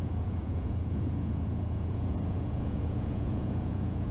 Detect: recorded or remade remade